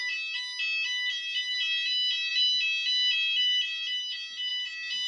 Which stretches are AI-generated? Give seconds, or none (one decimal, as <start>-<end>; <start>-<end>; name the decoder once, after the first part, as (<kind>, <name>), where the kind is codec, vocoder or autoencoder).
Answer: none